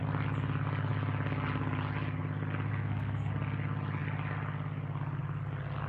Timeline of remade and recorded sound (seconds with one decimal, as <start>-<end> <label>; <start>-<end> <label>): 0.0-2.7 recorded; 2.7-3.3 remade; 3.3-5.9 recorded